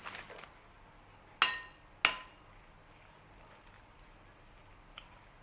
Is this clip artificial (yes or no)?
no